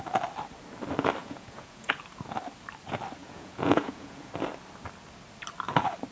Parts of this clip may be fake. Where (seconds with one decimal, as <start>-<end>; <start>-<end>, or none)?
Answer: 1.2-2.0; 3.2-4.3